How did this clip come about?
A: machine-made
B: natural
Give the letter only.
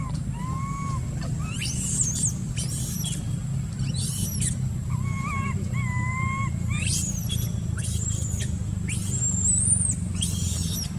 B